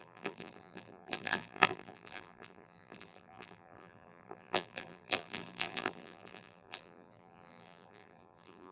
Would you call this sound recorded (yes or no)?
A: no